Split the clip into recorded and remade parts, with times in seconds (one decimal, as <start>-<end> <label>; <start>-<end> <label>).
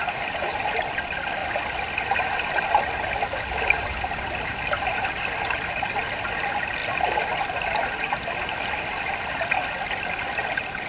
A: 0.0-10.9 recorded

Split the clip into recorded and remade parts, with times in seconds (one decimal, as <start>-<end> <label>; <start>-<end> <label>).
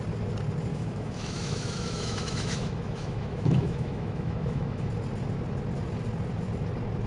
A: 0.0-0.7 recorded; 0.7-4.9 remade; 4.9-7.1 recorded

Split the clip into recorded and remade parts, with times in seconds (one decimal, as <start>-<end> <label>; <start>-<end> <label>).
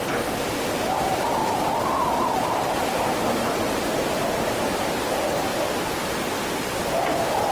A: 0.0-7.5 recorded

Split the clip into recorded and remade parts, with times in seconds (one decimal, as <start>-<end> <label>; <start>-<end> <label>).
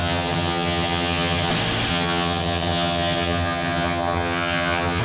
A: 0.0-1.5 remade; 1.5-1.9 recorded; 1.9-5.0 remade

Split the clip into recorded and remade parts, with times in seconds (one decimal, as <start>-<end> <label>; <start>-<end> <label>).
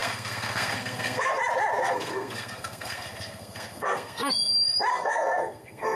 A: 0.0-1.4 remade; 1.4-1.8 recorded; 1.8-4.3 remade; 4.3-4.9 recorded; 4.9-6.0 remade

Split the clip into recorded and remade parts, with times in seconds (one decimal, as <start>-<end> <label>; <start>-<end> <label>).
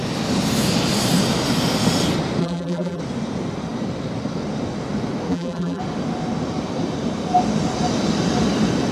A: 0.0-2.4 recorded; 2.4-3.0 remade; 3.0-5.3 recorded; 5.3-5.8 remade; 5.8-8.9 recorded